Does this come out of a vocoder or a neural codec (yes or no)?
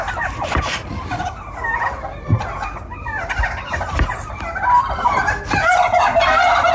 no